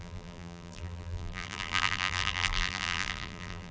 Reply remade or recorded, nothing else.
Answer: remade